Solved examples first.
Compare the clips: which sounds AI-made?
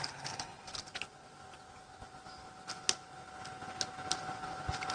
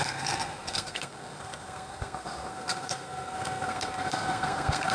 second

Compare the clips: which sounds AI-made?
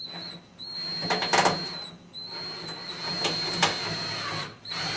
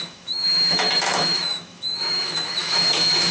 second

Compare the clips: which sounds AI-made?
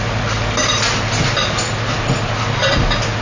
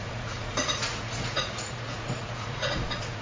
second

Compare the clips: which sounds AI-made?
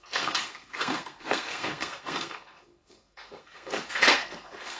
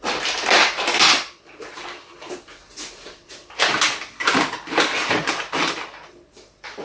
first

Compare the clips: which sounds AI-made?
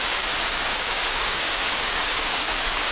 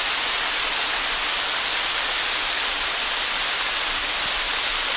first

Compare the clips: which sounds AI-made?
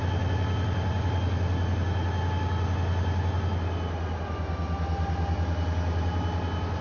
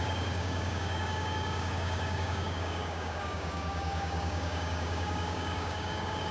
second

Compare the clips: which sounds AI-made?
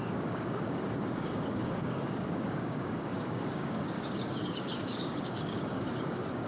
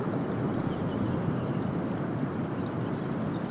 first